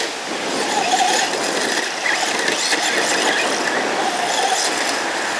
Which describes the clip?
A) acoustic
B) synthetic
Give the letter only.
A